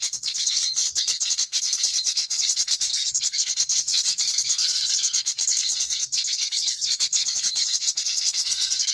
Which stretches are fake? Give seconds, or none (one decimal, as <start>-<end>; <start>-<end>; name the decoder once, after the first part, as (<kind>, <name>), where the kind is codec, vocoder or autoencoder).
0.0-8.9 (codec, SNAC)